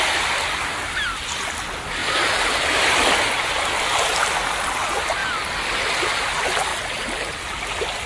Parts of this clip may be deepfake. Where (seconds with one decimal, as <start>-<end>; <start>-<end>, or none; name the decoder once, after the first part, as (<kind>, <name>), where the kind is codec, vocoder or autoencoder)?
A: 2.0-3.0 (vocoder, BigVGAN v2)